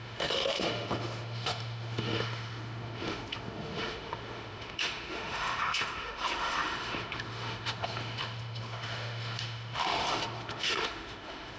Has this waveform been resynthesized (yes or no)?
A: yes